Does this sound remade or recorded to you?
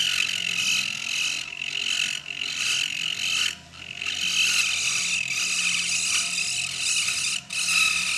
recorded